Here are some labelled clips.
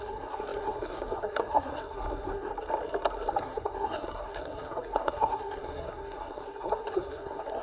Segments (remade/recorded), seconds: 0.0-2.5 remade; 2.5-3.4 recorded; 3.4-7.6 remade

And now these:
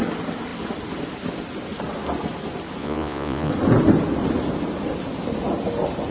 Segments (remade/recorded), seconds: 0.0-2.8 recorded; 2.8-3.5 remade; 3.5-6.1 recorded

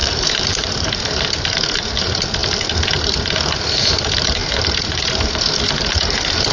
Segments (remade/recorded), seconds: 0.0-1.0 remade; 1.0-4.4 recorded; 4.4-5.9 remade; 5.9-6.5 recorded

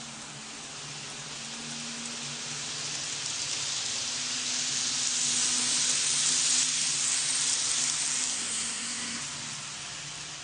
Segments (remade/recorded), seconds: 0.0-8.3 recorded; 8.3-9.2 remade; 9.2-10.4 recorded

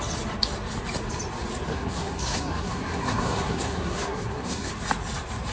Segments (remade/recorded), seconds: 0.0-1.7 recorded; 1.7-4.7 remade; 4.7-5.5 recorded